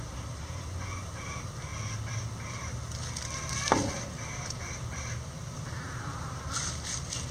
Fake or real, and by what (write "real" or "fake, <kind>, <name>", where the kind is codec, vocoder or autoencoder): fake, vocoder, BigVGAN v2